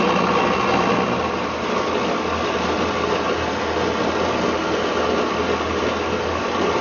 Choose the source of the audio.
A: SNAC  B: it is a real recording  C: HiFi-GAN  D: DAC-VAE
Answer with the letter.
B